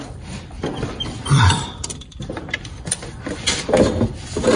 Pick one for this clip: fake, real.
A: fake